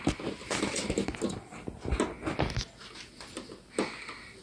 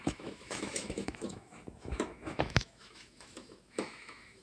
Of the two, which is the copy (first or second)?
second